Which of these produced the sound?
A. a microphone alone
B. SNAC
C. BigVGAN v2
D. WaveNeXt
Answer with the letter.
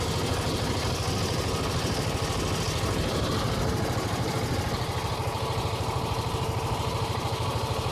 A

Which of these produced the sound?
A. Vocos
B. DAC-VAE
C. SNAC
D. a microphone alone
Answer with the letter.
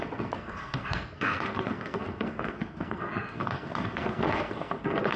C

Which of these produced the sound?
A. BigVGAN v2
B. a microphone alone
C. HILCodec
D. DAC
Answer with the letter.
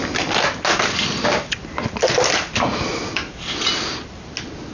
B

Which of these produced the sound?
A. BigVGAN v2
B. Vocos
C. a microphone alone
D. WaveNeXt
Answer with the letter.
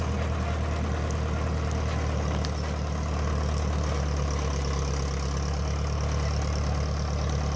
C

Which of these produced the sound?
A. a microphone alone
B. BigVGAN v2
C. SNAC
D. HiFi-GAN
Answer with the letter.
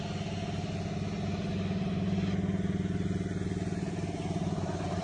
A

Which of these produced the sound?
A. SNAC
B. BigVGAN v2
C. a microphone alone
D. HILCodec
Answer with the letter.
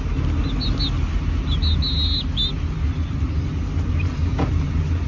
C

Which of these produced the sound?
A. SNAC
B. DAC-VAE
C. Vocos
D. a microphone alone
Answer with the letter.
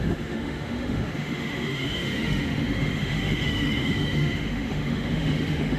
B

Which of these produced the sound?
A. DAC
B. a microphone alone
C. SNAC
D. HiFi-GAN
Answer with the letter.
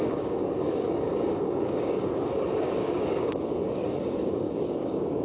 A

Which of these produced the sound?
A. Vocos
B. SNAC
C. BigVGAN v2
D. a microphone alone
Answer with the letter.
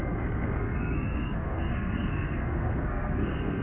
B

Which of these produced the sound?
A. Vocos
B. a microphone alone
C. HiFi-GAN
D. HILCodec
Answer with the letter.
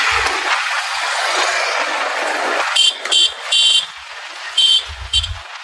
A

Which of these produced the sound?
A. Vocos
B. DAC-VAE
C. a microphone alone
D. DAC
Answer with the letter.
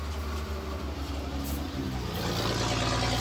C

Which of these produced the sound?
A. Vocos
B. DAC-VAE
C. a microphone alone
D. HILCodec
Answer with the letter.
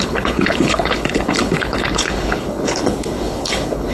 D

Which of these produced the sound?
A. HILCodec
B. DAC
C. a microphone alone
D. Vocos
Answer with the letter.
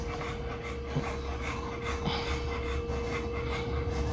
C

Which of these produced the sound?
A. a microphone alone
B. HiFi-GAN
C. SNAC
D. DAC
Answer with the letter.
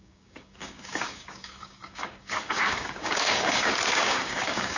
D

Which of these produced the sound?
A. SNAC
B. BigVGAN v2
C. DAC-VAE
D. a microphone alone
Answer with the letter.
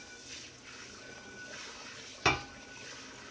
D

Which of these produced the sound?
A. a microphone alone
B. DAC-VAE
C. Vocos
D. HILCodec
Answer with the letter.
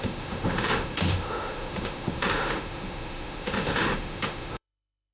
B